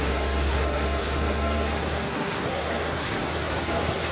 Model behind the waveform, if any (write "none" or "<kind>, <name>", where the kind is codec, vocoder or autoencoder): codec, SNAC